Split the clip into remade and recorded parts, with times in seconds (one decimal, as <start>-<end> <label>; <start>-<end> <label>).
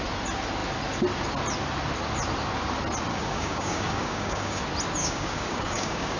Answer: 0.0-3.1 recorded; 3.1-4.6 remade; 4.6-5.0 recorded; 5.0-6.2 remade